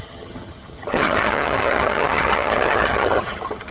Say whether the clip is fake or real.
fake